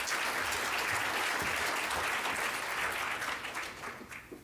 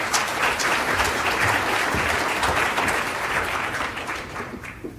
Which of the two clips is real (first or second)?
first